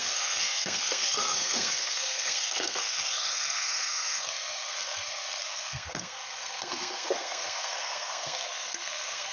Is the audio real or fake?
fake